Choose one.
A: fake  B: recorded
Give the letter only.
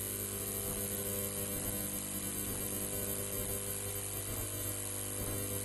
B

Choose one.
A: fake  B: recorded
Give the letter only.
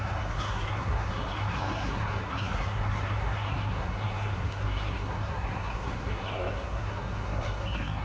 A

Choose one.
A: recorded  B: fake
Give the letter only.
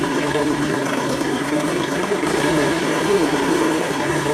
B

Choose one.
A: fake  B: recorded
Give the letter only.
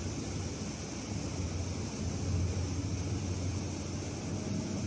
B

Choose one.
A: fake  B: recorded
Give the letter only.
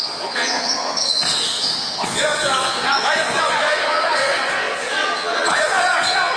A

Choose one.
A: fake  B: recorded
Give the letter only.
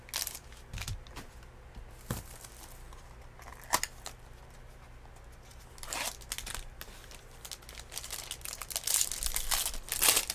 B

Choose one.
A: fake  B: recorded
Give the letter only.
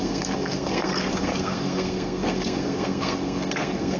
A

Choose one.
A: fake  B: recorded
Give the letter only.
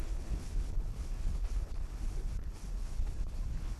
A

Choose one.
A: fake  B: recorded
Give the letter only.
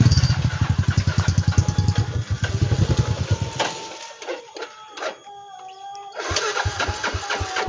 B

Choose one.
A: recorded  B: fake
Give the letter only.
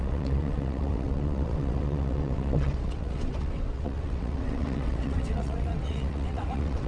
B